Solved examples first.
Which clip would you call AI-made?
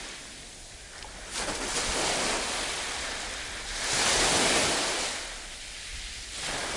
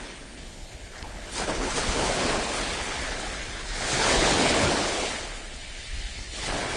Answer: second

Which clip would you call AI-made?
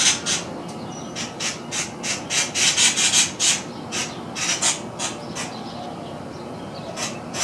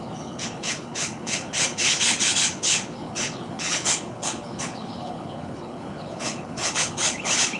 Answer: second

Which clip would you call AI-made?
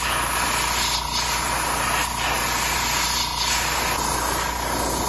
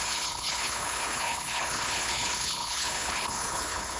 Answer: second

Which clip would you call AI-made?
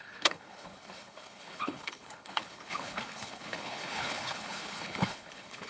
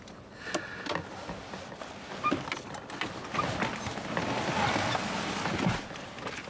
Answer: first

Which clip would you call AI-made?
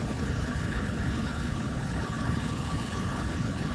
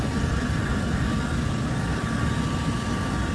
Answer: first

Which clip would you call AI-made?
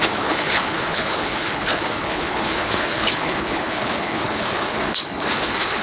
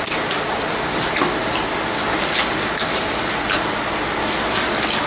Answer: first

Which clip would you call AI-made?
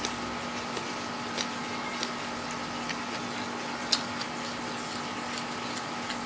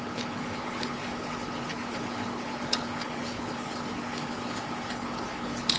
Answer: second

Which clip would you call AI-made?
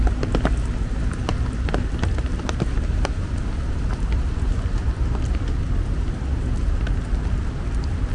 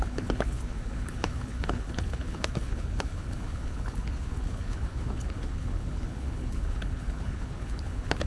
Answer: second